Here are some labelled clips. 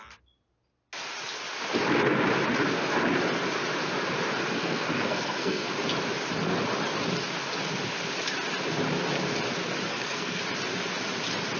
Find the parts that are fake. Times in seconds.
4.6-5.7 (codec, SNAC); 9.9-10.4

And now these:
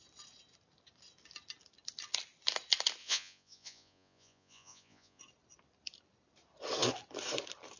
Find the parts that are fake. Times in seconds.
3.0-5.2 (vocoder, Vocos)

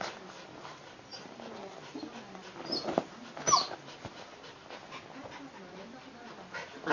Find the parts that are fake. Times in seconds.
none

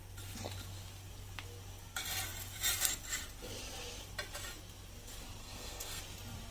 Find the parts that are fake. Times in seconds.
5.4-6.0 (codec, SNAC)

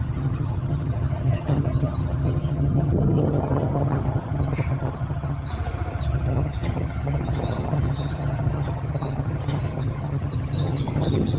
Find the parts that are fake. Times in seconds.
0.0-5.5 (vocoder, HiFi-GAN); 6.0-11.4

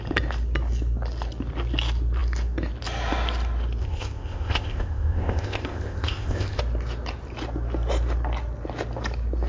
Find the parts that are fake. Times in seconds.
3.8-6.6 (codec, ZipCodec)